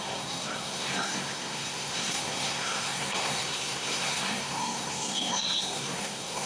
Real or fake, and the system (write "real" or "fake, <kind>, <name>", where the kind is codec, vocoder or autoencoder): fake, codec, SNAC